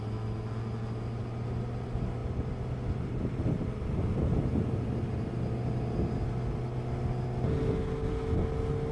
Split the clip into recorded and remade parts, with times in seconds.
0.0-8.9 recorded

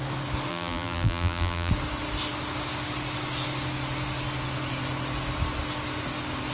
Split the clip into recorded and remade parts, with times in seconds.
0.0-0.5 recorded; 0.5-1.7 remade; 1.7-6.5 recorded

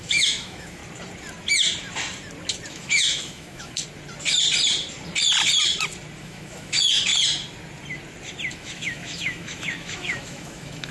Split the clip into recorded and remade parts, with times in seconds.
0.0-0.8 remade; 0.8-2.7 recorded; 2.7-3.8 remade; 3.8-6.2 recorded; 6.2-7.1 remade; 7.1-8.5 recorded; 8.5-10.9 remade

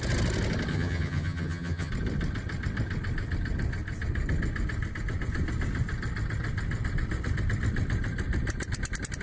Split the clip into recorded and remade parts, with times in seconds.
0.0-0.7 recorded; 0.7-1.9 remade; 1.9-9.2 recorded

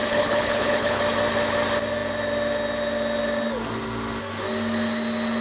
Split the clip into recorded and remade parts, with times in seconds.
0.0-1.0 remade; 1.0-5.4 recorded